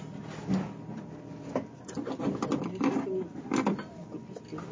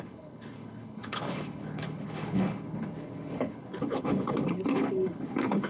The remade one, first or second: second